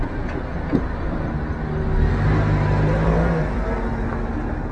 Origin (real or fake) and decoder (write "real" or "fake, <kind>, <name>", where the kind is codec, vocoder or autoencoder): real